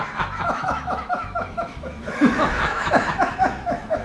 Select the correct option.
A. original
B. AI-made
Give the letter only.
B